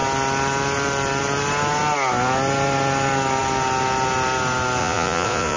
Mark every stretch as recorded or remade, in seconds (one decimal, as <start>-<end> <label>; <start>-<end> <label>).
0.0-4.8 recorded; 4.8-5.6 remade